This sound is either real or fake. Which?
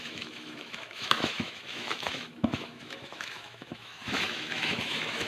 fake